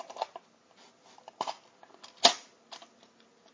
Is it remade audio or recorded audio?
recorded